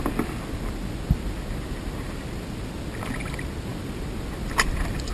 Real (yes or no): yes